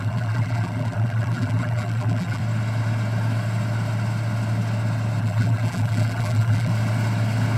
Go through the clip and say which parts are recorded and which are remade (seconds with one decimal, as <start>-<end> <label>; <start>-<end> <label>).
0.0-2.4 remade; 2.4-5.2 recorded; 5.2-6.7 remade; 6.7-7.6 recorded